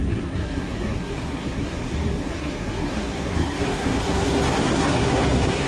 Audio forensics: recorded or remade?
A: remade